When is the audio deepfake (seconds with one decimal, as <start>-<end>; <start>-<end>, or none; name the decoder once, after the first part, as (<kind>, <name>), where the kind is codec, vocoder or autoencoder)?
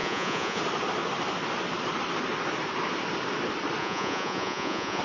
0.0-0.6 (vocoder, Vocos); 3.8-5.0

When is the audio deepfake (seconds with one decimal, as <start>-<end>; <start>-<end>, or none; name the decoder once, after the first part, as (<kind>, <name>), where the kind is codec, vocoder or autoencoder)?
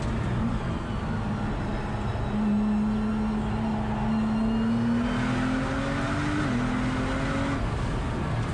none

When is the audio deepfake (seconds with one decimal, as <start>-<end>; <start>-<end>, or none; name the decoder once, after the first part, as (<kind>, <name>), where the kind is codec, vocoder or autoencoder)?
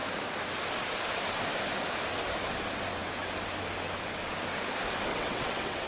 5.1-5.9 (vocoder, WaveNeXt)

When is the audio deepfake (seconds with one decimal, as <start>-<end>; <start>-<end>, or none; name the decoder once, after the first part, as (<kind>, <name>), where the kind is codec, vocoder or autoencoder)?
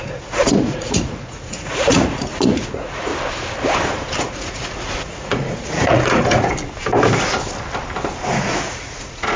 0.0-3.1 (vocoder, Vocos); 4.2-6.5; 8.3-9.4